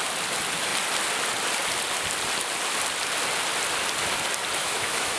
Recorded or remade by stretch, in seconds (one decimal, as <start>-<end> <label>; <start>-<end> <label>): 0.0-4.6 recorded; 4.6-5.2 remade